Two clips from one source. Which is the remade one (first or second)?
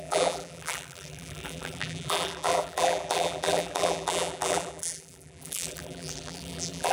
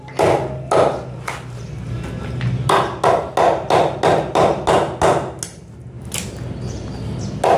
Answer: first